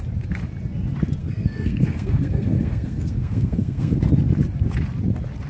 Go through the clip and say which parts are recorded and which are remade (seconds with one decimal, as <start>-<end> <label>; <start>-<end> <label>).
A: 0.0-1.2 recorded; 1.2-4.0 remade; 4.0-5.5 recorded